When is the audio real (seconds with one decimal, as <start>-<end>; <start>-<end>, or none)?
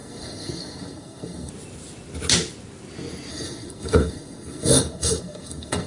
1.5-3.3